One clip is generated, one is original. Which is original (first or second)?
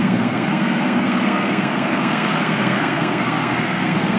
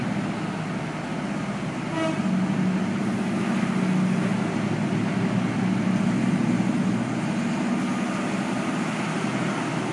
second